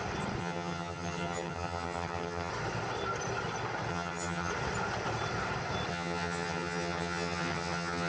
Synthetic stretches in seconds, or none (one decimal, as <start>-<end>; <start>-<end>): 0.4-2.5; 3.9-4.5; 5.9-8.1